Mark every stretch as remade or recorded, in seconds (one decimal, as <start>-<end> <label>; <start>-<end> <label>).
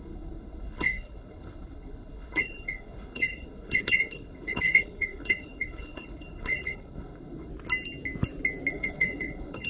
0.0-7.5 remade; 7.5-8.7 recorded; 8.7-9.7 remade